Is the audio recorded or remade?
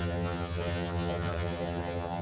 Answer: remade